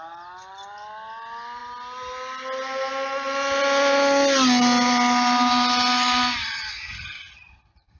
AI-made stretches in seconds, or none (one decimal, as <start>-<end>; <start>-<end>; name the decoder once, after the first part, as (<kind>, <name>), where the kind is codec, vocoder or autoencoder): 6.4-8.0 (vocoder, Vocos)